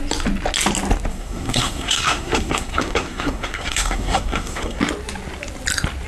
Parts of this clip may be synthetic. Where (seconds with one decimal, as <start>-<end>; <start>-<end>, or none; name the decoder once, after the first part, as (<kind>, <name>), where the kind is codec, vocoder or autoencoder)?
1.1-4.8 (codec, SNAC)